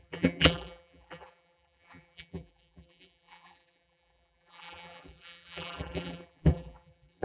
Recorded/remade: remade